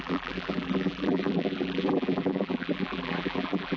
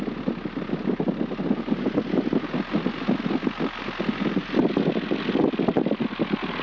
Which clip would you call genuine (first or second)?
second